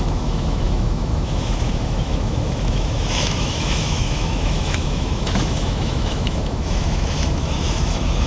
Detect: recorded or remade remade